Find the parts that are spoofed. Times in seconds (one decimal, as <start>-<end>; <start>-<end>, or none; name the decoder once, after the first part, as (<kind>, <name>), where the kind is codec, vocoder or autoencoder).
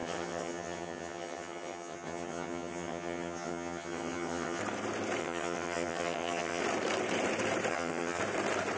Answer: 0.0-4.6 (vocoder, HiFi-GAN); 5.2-6.6; 7.7-8.2